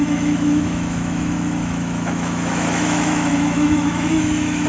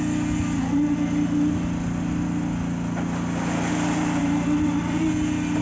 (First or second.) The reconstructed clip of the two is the first